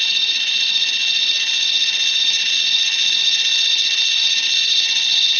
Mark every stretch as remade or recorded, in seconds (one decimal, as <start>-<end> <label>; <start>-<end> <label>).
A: 0.0-5.4 recorded